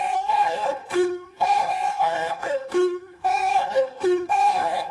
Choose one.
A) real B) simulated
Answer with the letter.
B